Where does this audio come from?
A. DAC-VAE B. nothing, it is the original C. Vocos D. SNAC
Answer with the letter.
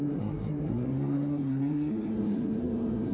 D